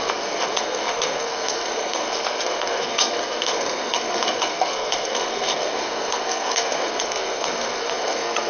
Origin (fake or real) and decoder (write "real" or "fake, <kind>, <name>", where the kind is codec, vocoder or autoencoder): fake, codec, SNAC